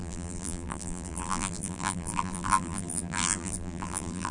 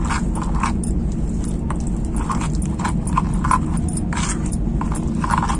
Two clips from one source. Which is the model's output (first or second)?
first